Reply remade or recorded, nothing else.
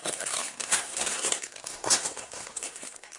remade